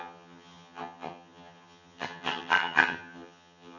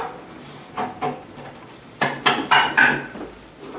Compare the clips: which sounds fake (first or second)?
first